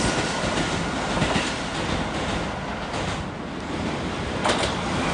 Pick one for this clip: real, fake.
real